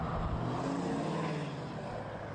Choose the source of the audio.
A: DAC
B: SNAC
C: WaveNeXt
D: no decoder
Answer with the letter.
D